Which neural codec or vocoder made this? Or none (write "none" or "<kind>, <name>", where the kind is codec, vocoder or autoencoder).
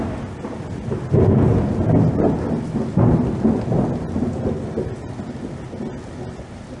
none